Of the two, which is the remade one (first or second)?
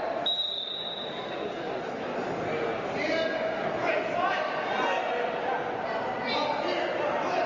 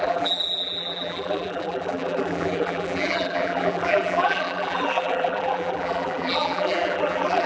second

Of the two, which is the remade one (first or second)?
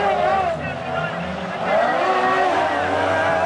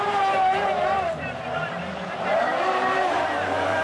second